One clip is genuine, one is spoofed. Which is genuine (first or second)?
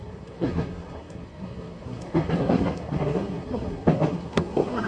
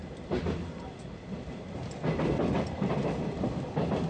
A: second